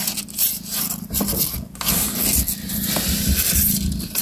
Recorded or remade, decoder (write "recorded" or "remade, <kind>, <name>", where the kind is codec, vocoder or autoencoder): recorded